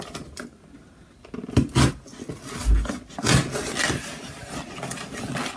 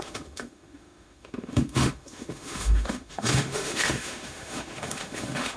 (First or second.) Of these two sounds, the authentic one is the first